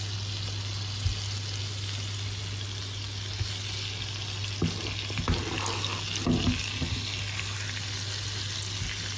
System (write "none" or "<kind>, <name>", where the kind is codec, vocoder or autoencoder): none